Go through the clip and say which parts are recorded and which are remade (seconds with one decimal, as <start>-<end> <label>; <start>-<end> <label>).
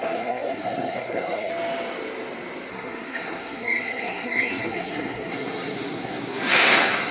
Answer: 0.0-1.5 remade; 1.5-2.7 recorded; 2.7-7.1 remade